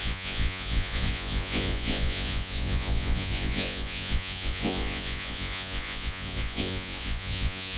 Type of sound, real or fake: fake